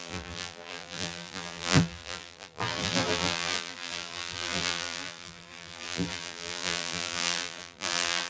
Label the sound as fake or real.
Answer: fake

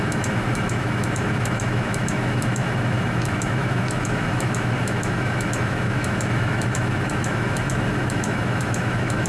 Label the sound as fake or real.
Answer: fake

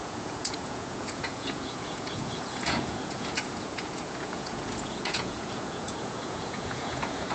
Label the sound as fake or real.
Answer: fake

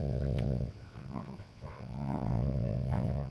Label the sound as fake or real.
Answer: fake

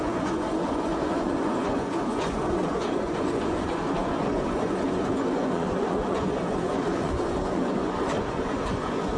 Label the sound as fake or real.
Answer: fake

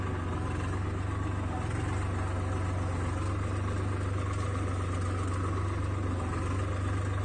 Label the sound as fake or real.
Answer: real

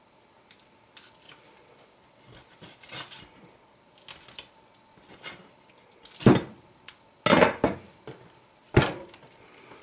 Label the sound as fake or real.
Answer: real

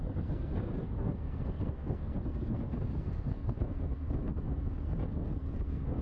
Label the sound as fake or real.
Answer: fake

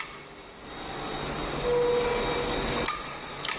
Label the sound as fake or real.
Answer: real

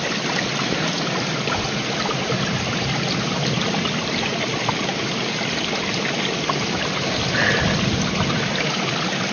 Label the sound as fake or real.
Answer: real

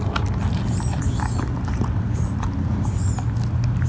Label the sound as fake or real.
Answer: real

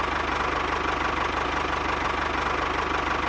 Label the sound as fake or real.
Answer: real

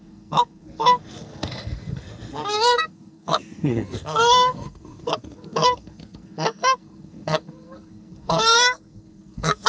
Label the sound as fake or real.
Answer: fake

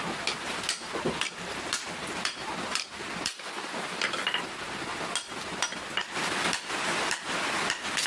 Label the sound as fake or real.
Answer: real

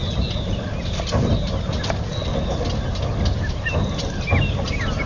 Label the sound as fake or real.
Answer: real